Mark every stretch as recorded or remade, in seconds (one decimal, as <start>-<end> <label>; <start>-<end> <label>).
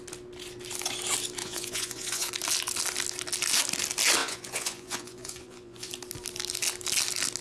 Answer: 0.0-1.4 recorded; 1.4-2.3 remade; 2.3-4.2 recorded; 4.2-5.9 remade; 5.9-7.4 recorded